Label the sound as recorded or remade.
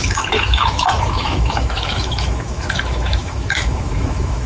remade